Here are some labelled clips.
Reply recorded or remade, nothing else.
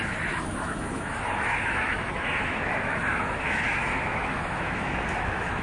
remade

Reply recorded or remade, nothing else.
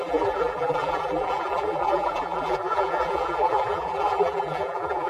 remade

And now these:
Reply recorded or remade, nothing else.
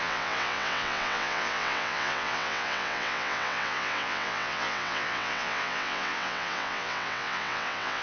remade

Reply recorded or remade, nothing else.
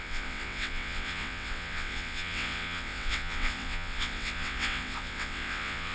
remade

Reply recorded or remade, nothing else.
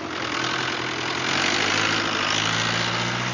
recorded